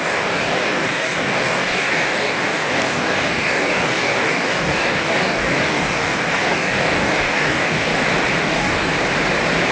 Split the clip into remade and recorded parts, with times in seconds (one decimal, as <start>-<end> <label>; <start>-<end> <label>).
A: 0.0-7.9 remade; 7.9-8.4 recorded; 8.4-8.9 remade; 8.9-9.7 recorded